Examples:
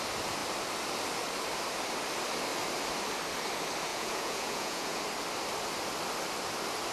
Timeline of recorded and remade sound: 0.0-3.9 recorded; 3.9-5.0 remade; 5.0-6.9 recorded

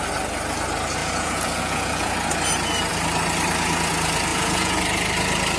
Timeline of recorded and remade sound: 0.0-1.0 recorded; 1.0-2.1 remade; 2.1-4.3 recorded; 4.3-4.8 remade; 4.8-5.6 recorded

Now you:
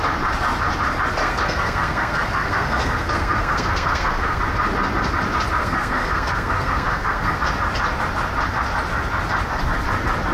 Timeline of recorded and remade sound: 0.0-1.2 recorded; 1.2-4.4 remade; 4.4-5.6 recorded; 5.6-7.4 remade; 7.4-10.3 recorded